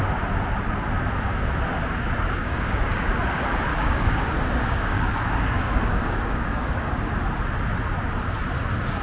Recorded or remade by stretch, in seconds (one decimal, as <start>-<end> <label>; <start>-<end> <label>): 0.0-2.4 recorded; 2.4-3.1 remade; 3.1-3.7 recorded; 3.7-7.1 remade; 7.1-9.0 recorded